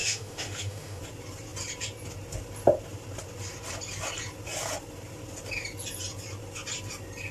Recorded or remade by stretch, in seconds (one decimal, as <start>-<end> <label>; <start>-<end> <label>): 0.0-1.0 remade; 1.0-7.3 recorded